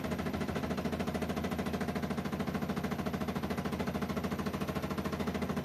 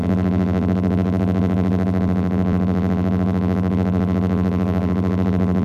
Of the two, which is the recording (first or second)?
first